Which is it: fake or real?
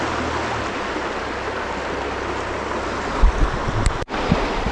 real